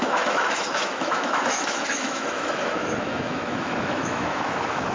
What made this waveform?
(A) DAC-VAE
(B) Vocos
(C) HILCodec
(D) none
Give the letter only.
A